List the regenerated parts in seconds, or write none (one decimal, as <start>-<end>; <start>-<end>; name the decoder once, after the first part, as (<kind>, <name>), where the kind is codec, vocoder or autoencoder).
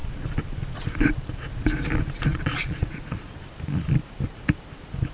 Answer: 2.3-3.3 (vocoder, Vocos)